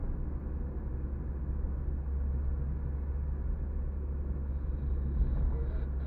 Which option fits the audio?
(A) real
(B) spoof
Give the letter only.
A